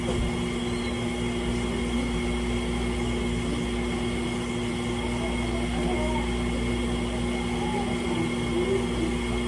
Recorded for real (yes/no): yes